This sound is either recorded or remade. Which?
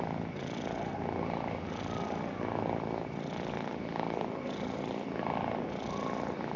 recorded